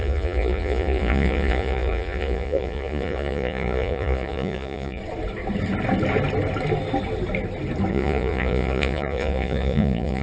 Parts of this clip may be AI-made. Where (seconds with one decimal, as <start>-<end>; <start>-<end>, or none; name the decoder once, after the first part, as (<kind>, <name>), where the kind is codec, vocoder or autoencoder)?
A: 0.0-5.0 (vocoder, Vocos); 7.9-10.2